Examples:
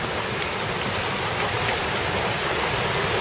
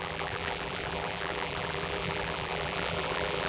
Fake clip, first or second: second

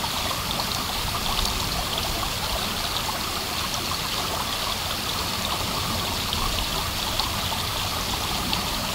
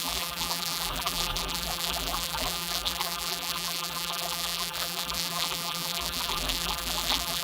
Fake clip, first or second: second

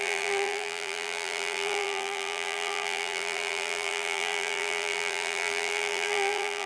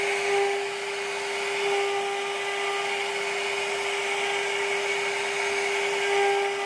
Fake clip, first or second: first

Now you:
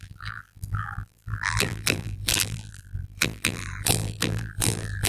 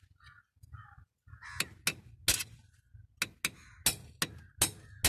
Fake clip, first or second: first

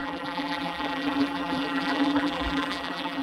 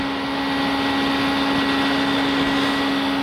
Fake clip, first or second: first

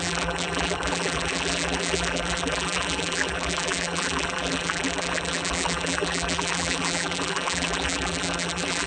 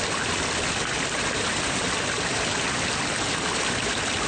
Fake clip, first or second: first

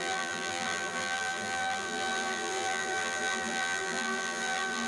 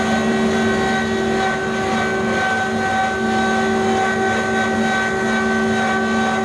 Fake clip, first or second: first